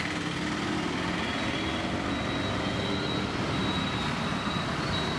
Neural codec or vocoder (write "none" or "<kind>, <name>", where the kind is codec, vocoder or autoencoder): none